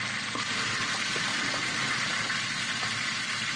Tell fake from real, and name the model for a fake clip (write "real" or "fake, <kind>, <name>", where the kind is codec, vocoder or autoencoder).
real